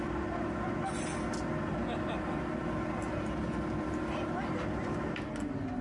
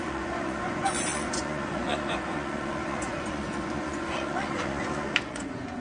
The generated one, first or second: second